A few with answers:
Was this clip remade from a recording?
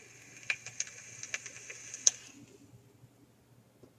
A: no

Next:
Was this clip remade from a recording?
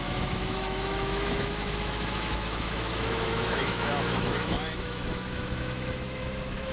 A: yes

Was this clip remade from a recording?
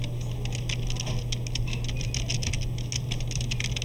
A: no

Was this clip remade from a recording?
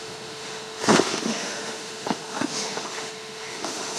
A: yes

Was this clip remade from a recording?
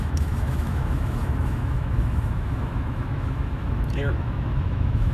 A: yes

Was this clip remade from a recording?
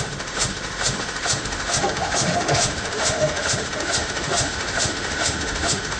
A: yes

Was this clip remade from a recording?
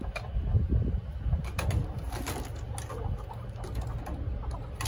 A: no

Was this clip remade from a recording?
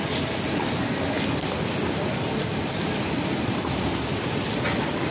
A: no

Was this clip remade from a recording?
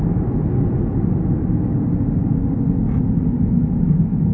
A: no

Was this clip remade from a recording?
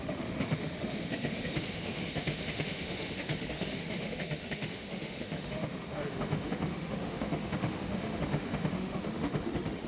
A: yes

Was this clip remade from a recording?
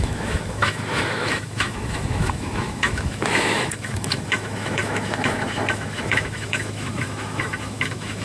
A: yes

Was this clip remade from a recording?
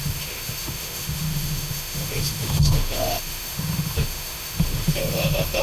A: yes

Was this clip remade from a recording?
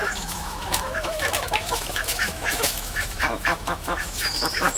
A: yes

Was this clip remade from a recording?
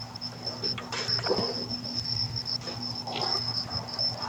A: no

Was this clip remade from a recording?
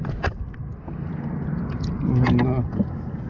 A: no